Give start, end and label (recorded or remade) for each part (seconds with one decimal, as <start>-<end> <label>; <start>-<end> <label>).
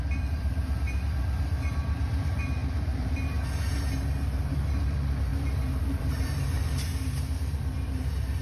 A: 0.0-8.4 remade